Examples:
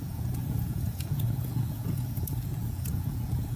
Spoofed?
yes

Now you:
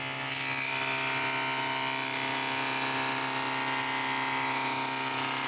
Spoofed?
no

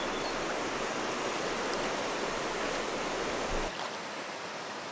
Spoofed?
no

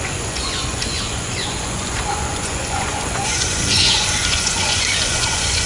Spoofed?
yes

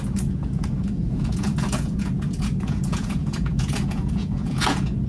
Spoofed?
yes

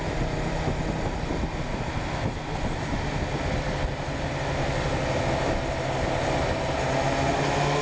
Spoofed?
no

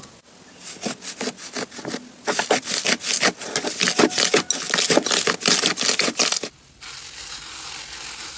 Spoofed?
no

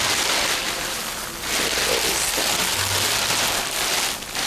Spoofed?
no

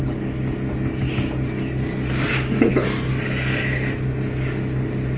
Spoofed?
no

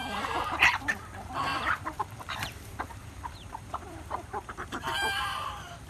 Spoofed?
yes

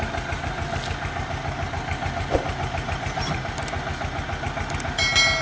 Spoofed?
no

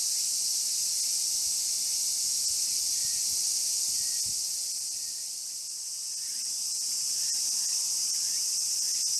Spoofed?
no